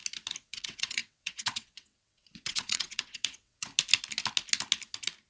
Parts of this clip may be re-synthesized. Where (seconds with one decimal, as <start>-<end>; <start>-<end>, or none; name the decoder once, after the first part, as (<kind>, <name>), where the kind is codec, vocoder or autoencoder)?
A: 0.5-3.7 (vocoder, WaveNeXt)